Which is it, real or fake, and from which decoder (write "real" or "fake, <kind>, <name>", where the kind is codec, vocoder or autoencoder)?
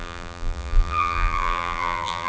fake, vocoder, BigVGAN v2